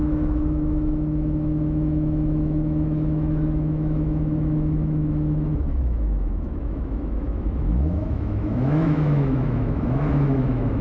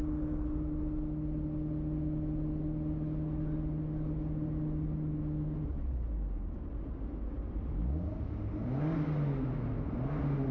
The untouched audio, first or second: second